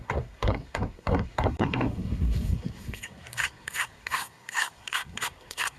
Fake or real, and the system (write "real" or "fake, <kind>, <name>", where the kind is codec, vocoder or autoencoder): fake, codec, SNAC